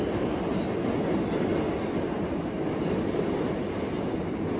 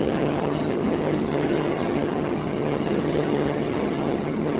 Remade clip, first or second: second